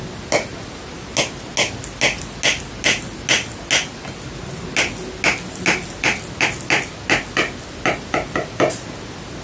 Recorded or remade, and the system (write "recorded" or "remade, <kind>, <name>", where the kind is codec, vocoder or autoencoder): recorded